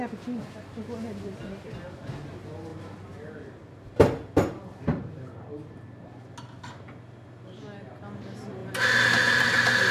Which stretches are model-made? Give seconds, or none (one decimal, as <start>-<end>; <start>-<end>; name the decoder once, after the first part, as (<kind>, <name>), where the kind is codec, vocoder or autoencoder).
none